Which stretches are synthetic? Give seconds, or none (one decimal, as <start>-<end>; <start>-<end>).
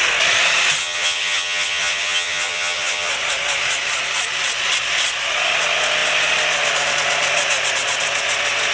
0.8-3.1